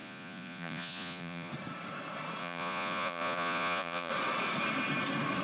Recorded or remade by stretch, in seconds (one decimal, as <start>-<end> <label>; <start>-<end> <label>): 0.0-1.5 remade; 1.5-2.4 recorded; 2.4-4.1 remade; 4.1-5.4 recorded